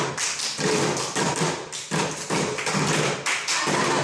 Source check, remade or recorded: recorded